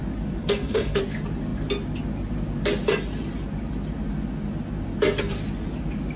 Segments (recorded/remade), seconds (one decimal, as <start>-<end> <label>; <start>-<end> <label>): 0.0-0.4 recorded; 0.4-1.0 remade; 1.0-6.2 recorded